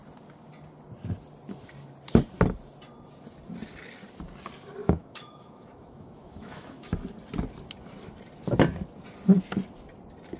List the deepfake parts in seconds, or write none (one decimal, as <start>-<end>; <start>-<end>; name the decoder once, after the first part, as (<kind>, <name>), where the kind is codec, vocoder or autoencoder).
4.8-6.9 (autoencoder, DAC-VAE)